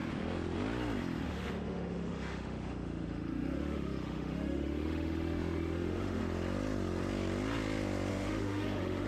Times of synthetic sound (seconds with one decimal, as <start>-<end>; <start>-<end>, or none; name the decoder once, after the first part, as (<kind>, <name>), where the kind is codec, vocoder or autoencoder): 1.3-6.2 (autoencoder, DAC-VAE); 8.1-9.1